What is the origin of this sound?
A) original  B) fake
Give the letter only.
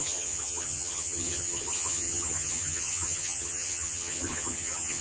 B